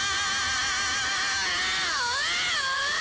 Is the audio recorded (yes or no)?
yes